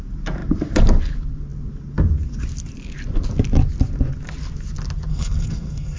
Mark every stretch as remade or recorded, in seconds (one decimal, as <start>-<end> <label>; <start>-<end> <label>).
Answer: 0.0-5.1 recorded; 5.1-6.0 remade